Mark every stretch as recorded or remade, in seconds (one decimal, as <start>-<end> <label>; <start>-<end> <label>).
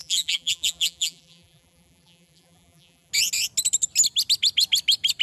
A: 0.0-3.1 remade; 3.1-5.2 recorded